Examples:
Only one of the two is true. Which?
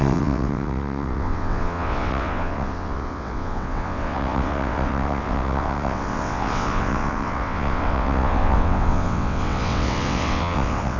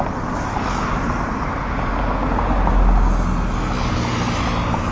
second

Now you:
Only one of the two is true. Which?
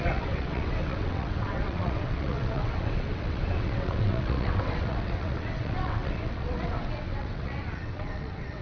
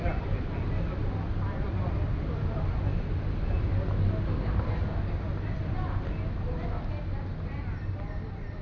second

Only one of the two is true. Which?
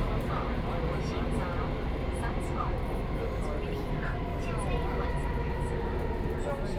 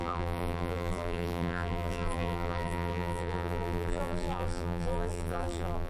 first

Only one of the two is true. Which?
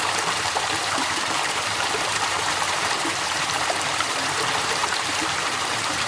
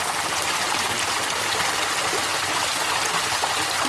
second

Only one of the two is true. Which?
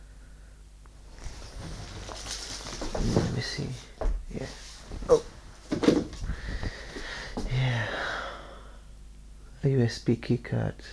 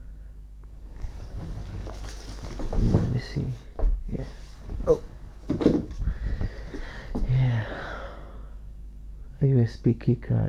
first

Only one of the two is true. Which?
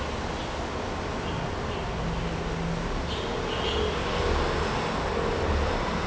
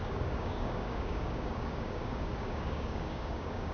first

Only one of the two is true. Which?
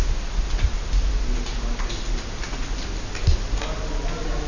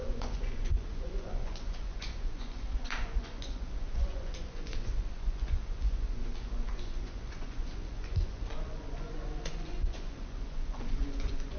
first